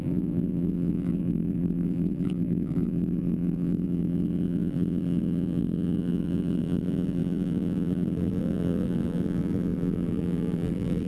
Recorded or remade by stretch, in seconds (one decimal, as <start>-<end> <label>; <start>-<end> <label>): 0.0-11.1 remade